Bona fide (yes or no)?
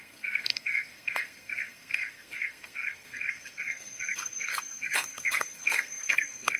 no